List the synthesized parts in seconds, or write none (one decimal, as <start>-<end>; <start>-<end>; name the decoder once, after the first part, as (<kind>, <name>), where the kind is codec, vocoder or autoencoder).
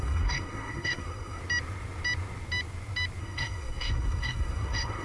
0.0-1.4 (codec, SNAC); 3.2-5.0